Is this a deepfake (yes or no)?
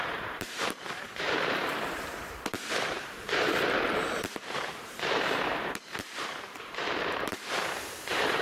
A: yes